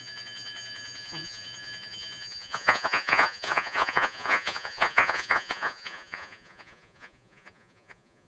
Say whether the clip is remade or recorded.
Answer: remade